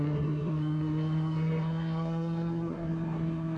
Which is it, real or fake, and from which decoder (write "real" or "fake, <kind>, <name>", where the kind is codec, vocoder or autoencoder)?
fake, codec, SNAC